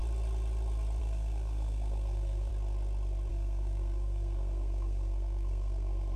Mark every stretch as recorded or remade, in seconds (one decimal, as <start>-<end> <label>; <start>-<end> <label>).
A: 0.0-1.0 recorded; 1.0-2.5 remade; 2.5-3.3 recorded; 3.3-6.2 remade